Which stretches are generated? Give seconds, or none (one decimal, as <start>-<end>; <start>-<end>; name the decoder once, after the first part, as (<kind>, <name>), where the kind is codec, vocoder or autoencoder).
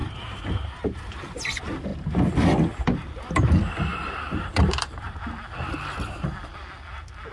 0.0-1.0 (vocoder, BigVGAN v2); 3.9-5.2